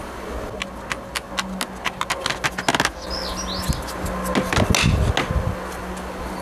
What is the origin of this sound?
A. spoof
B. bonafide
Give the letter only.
B